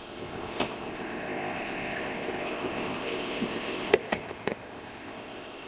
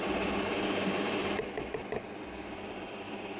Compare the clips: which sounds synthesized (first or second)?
first